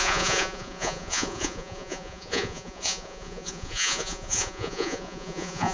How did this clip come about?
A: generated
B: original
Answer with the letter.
A